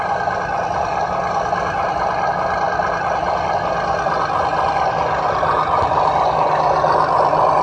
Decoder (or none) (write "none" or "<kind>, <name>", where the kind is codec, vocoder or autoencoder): none